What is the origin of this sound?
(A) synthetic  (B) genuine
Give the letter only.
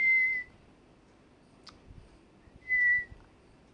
B